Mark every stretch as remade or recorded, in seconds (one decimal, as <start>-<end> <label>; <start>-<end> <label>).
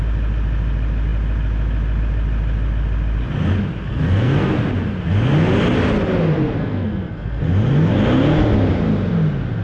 0.0-3.9 recorded; 3.9-4.6 remade; 4.6-6.6 recorded; 6.6-7.4 remade; 7.4-9.6 recorded